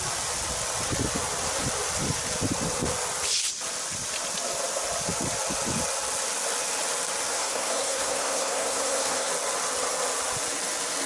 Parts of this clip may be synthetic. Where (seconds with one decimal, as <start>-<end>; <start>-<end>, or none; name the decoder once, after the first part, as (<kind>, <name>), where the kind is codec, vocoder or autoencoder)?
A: 7.3-9.3 (codec, SNAC)